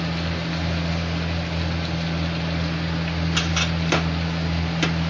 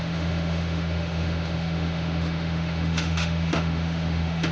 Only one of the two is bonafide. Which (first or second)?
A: first